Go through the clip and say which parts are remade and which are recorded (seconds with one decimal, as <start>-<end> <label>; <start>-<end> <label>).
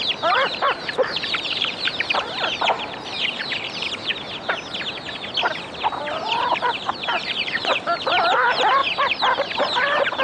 0.0-4.1 remade; 4.1-5.5 recorded; 5.5-10.2 remade